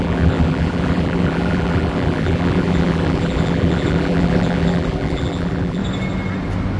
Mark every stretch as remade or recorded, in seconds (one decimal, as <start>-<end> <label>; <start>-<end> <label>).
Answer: 0.0-5.8 remade; 5.8-6.8 recorded

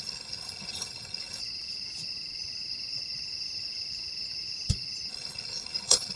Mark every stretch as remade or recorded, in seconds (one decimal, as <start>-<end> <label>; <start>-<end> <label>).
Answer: 0.0-1.4 remade; 1.4-5.1 recorded; 5.1-6.2 remade